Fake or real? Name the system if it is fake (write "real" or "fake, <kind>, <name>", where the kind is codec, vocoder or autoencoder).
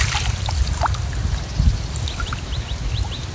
real